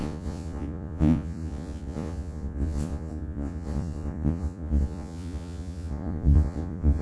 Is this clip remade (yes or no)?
yes